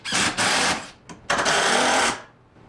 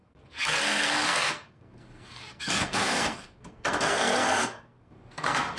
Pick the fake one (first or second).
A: second